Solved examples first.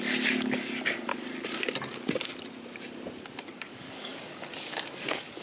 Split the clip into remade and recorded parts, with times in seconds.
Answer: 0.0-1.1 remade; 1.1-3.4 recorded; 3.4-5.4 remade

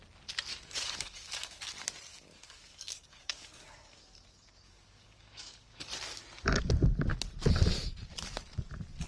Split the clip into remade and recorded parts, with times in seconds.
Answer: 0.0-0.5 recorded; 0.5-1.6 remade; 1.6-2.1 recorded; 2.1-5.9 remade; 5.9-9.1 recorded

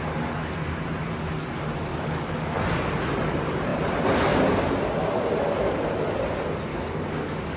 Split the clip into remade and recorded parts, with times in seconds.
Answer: 0.0-1.9 recorded; 1.9-2.6 remade; 2.6-6.7 recorded; 6.7-7.6 remade

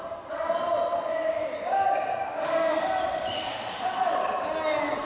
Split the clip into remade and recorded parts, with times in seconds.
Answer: 0.0-1.1 recorded; 1.1-2.7 remade; 2.7-5.0 recorded

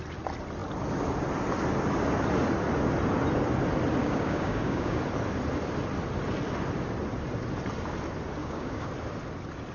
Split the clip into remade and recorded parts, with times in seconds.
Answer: 0.0-4.0 recorded; 4.0-5.0 remade; 5.0-8.4 recorded; 8.4-8.9 remade; 8.9-9.7 recorded

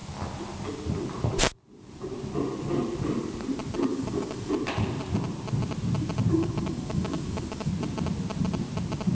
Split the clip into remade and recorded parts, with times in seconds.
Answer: 0.0-3.9 recorded; 3.9-4.5 remade; 4.5-6.3 recorded; 6.3-7.7 remade; 7.7-9.1 recorded